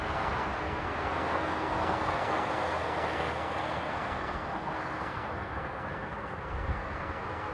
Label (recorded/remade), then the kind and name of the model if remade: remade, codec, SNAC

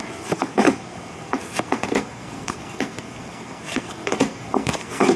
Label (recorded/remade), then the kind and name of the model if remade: remade, codec, SNAC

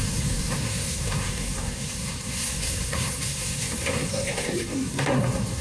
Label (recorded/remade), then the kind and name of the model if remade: remade, codec, SNAC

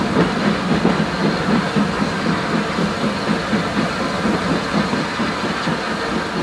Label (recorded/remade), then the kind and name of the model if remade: recorded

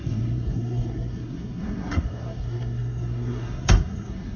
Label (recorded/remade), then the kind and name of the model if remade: remade, codec, SNAC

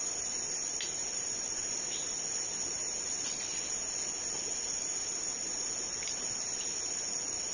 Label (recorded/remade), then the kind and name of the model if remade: recorded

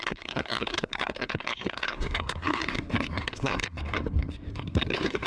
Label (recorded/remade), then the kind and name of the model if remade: remade, codec, SNAC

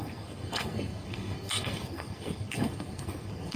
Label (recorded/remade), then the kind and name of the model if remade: remade, codec, SNAC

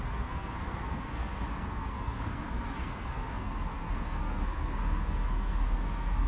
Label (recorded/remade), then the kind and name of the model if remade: remade, codec, SNAC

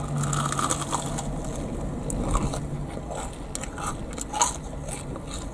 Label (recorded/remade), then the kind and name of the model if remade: recorded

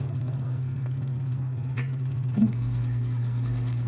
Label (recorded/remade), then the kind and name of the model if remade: remade, codec, SNAC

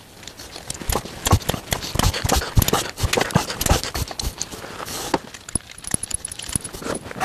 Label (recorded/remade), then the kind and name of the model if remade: recorded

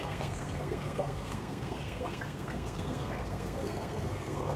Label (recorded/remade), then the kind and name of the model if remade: remade, codec, SNAC